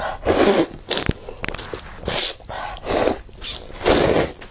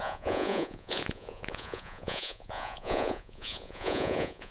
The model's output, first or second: second